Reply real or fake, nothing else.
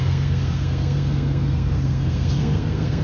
fake